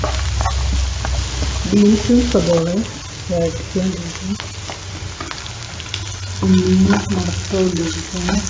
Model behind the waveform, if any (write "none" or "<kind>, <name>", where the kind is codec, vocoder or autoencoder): none